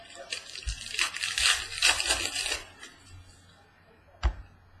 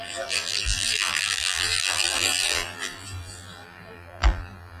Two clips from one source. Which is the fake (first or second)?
second